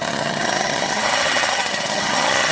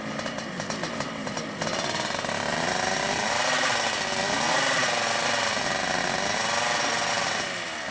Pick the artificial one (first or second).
first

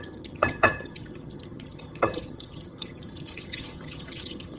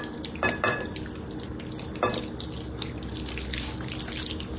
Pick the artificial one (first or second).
first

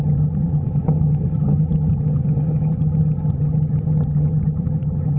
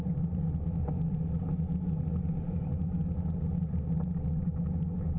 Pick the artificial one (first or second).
first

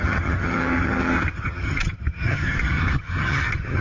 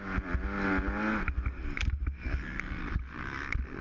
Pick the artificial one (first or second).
first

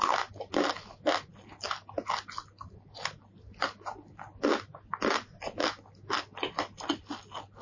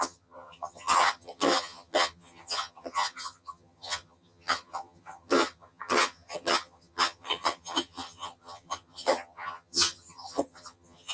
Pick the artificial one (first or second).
second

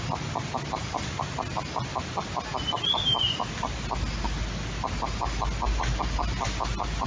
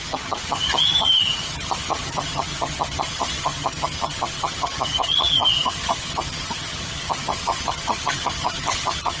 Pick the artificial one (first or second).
second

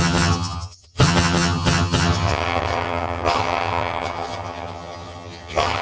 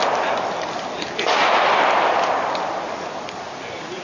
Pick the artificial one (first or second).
first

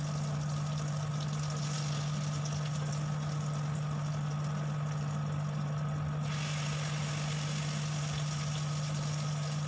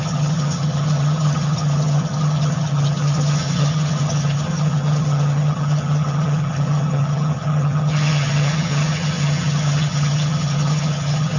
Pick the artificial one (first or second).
second